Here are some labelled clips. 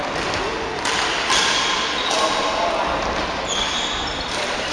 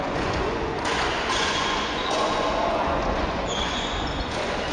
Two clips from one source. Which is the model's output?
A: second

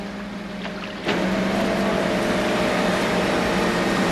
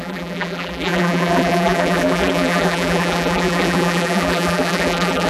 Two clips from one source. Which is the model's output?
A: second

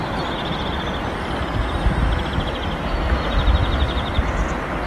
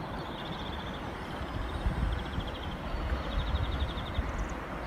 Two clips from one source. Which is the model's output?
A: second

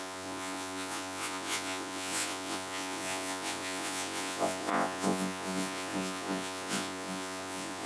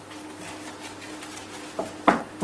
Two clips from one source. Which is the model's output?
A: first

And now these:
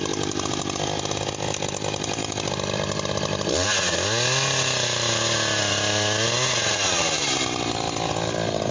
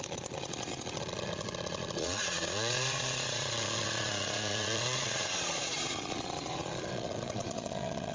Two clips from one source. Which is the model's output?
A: second